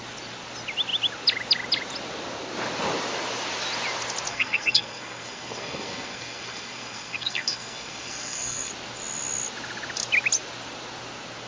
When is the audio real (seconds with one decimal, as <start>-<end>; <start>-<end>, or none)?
0.0-4.3; 8.7-11.5